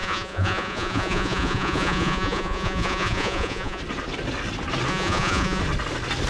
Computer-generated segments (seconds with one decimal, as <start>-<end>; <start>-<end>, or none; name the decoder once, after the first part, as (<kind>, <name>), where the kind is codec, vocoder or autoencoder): 0.0-3.8 (vocoder, Vocos); 4.9-5.6